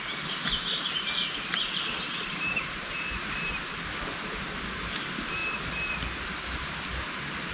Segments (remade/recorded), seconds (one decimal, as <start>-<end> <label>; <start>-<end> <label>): 0.0-5.4 remade; 5.4-6.3 recorded; 6.3-7.5 remade